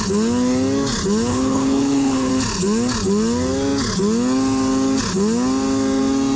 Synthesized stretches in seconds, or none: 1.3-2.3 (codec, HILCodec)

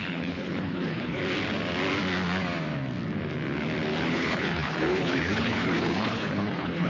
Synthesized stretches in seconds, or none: 0.0-1.2 (codec, HILCodec); 4.0-6.9

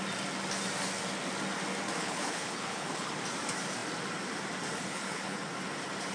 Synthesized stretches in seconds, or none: 2.0-3.1 (codec, HILCodec); 4.8-5.4

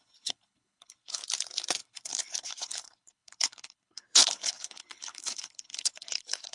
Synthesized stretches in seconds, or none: 0.0-1.2 (codec, HILCodec); 1.8-6.5

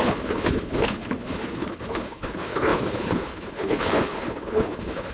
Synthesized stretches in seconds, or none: 0.0-5.1 (codec, HILCodec)

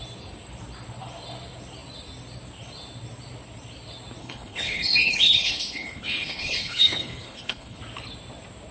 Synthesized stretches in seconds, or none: 4.2-7.8 (codec, HILCodec)